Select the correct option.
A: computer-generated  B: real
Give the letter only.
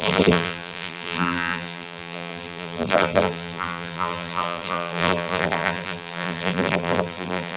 A